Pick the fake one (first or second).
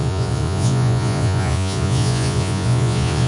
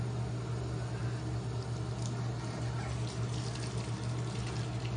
first